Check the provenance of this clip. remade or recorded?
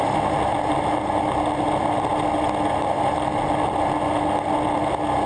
recorded